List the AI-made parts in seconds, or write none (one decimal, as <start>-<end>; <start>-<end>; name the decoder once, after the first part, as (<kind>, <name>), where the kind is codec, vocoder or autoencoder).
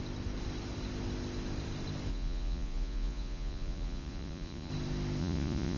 2.1-4.7 (vocoder, Vocos); 5.2-5.8